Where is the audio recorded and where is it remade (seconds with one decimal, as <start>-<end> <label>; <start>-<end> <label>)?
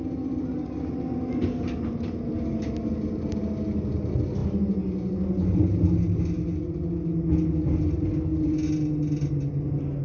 0.0-10.0 recorded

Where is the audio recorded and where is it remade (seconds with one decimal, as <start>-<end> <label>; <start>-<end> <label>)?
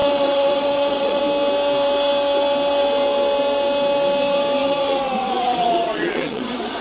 0.0-1.2 remade; 1.2-4.6 recorded; 4.6-6.8 remade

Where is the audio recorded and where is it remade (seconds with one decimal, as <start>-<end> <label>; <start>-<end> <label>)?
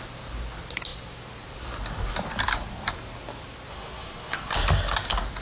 0.0-3.7 recorded; 3.7-4.5 remade; 4.5-5.4 recorded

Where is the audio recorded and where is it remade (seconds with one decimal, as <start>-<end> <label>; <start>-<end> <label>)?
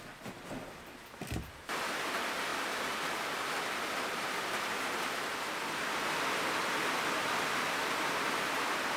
0.0-9.0 remade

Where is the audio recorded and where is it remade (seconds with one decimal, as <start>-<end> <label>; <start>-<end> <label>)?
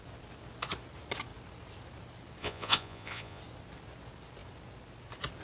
0.0-2.4 recorded; 2.4-3.4 remade; 3.4-5.4 recorded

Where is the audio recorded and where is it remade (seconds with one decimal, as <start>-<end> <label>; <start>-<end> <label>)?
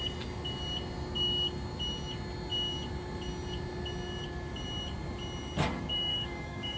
0.0-6.1 recorded; 6.1-6.8 remade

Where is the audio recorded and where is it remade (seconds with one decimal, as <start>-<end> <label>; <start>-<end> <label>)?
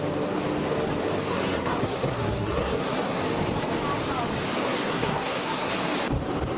0.0-1.3 recorded; 1.3-3.2 remade; 3.2-4.6 recorded; 4.6-5.7 remade; 5.7-6.6 recorded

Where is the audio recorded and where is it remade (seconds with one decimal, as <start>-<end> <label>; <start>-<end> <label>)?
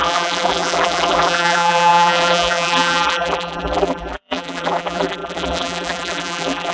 0.0-6.7 remade